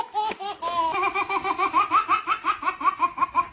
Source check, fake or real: real